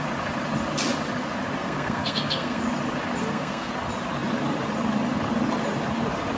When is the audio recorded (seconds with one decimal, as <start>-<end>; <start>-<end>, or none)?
0.0-1.6; 2.6-3.2; 3.7-6.4